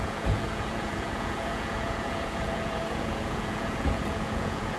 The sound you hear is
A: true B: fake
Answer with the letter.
B